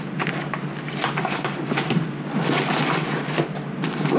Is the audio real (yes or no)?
yes